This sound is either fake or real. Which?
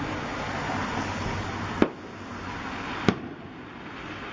real